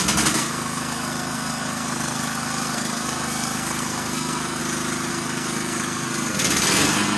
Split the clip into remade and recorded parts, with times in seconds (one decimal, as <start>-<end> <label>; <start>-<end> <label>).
0.0-4.6 remade; 4.6-5.1 recorded; 5.1-7.2 remade